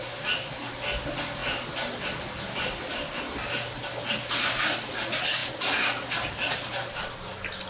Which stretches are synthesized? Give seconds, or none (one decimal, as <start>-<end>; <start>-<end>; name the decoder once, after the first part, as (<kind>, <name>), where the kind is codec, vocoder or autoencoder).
none